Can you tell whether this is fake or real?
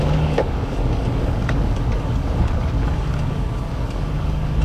fake